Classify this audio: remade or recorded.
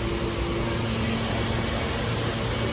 recorded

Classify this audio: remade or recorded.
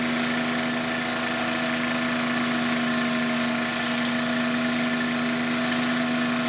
recorded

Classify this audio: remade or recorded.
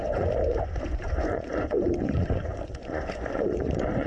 remade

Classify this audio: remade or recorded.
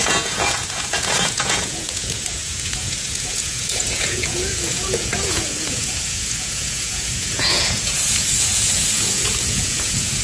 remade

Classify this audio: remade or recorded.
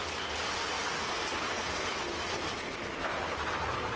recorded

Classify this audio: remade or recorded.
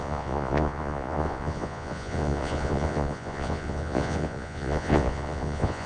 remade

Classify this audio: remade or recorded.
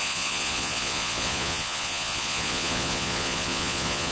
remade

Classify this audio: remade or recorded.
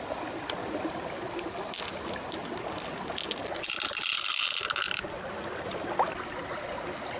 recorded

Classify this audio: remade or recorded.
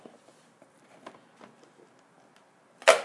recorded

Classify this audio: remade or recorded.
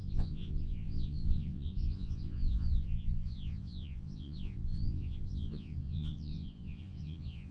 remade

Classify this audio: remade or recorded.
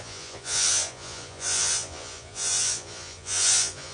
remade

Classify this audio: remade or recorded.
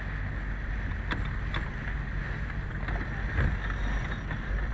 recorded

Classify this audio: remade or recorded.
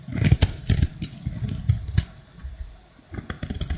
recorded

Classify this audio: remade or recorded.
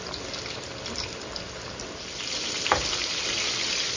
recorded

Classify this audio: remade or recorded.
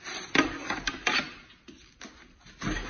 recorded